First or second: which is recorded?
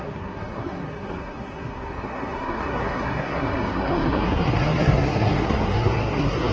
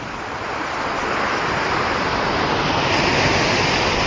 second